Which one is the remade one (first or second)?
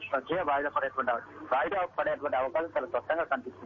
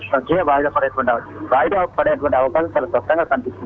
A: second